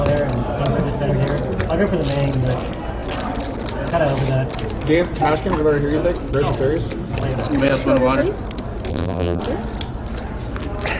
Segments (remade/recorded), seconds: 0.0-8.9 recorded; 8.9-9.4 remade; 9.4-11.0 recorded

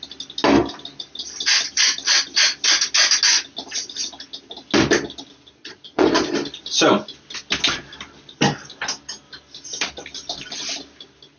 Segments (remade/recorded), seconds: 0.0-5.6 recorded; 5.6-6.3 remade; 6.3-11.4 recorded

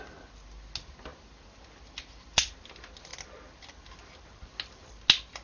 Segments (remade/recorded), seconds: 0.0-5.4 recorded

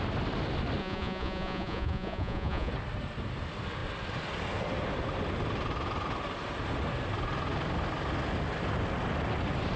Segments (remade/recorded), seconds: 0.0-0.8 recorded; 0.8-2.7 remade; 2.7-9.8 recorded

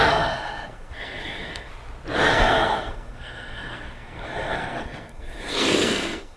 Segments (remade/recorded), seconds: 0.0-1.7 remade; 1.7-2.3 recorded; 2.3-6.4 remade

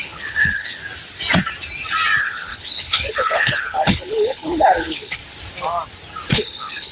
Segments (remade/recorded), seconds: 0.0-0.8 remade; 0.8-2.2 recorded; 2.2-5.2 remade; 5.2-6.3 recorded; 6.3-6.9 remade

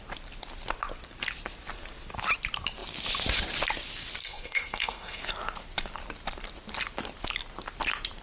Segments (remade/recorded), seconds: 0.0-4.2 recorded; 4.2-5.2 remade; 5.2-8.2 recorded